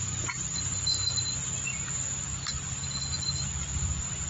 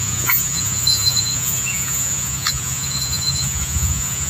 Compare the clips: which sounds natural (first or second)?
first